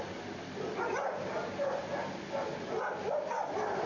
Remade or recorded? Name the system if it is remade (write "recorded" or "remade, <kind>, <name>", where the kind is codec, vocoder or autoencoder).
recorded